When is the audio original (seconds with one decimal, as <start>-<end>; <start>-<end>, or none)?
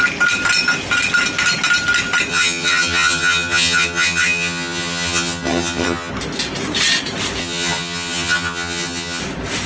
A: 0.0-2.3; 6.1-7.4; 9.2-9.7